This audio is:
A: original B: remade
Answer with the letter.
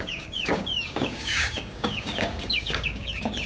B